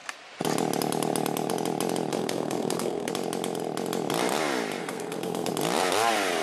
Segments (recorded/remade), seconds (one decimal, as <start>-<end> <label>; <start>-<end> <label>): 0.0-2.1 recorded; 2.1-3.1 remade; 3.1-4.8 recorded; 4.8-5.5 remade; 5.5-6.4 recorded